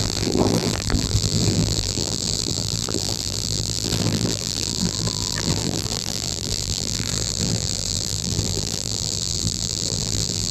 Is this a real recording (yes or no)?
no